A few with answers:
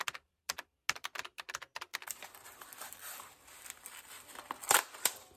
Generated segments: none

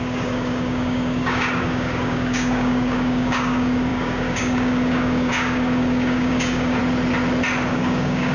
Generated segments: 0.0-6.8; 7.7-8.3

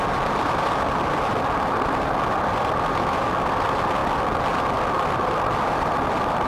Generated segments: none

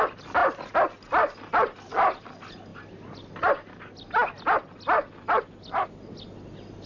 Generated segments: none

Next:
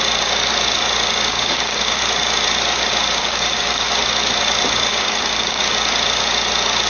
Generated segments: 1.3-2.0; 3.2-3.9; 4.9-5.6